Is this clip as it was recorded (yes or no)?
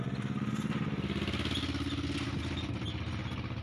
yes